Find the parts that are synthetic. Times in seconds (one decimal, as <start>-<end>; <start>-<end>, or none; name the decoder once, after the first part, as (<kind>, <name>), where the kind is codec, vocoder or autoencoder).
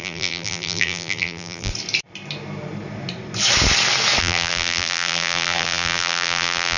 0.0-1.7 (vocoder, BigVGAN v2); 4.2-6.8